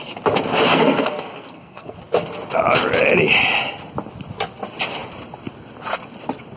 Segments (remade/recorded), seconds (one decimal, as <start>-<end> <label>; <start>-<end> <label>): 0.0-0.7 recorded; 0.7-2.0 remade; 2.0-6.6 recorded